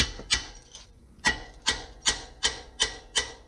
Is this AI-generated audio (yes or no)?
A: yes